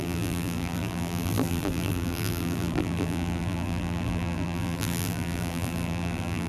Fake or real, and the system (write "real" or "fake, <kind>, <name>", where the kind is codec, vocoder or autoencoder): fake, vocoder, BigVGAN v2